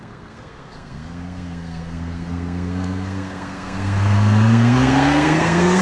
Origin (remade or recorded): remade